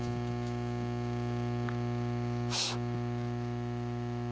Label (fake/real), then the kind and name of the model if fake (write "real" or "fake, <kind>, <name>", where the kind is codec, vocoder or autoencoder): fake, autoencoder, DAC-VAE